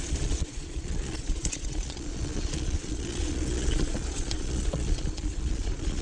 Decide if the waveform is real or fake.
fake